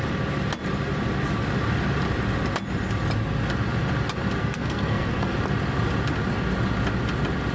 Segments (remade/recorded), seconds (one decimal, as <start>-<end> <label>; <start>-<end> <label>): 0.0-4.4 recorded; 4.4-5.3 remade; 5.3-7.5 recorded